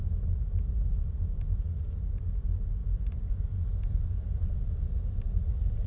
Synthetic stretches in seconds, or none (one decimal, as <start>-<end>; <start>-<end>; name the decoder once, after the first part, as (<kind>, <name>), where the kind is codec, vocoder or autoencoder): none